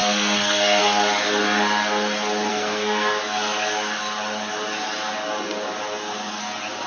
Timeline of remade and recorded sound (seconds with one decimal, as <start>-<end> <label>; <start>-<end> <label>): 0.0-0.8 remade; 0.8-2.5 recorded; 2.5-3.2 remade; 3.2-6.9 recorded

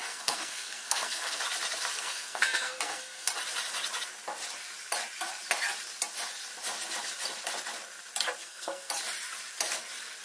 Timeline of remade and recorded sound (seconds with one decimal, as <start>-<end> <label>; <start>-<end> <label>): 0.0-1.4 remade; 1.4-1.9 recorded; 1.9-3.3 remade; 3.3-8.4 recorded; 8.4-8.9 remade; 8.9-10.2 recorded

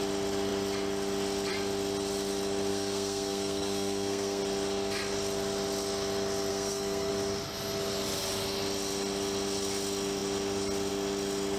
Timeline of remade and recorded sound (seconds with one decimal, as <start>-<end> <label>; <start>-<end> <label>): 0.0-2.7 recorded; 2.7-4.4 remade; 4.4-6.5 recorded; 6.5-7.1 remade; 7.1-11.6 recorded